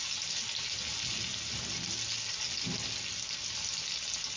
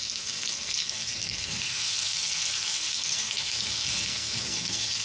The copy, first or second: second